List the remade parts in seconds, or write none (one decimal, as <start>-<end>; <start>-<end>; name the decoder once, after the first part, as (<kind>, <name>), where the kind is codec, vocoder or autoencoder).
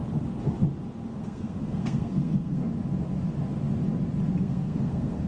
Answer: 1.1-2.6 (codec, SNAC); 4.4-5.3